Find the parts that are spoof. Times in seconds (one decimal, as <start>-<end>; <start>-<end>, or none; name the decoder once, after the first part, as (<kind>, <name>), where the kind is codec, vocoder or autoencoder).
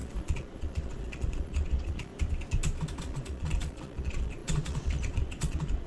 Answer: 0.0-2.1 (vocoder, Vocos); 3.0-5.9